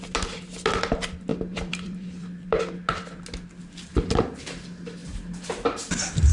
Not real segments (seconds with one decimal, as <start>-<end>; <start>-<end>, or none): 1.3-2.6; 5.0-6.3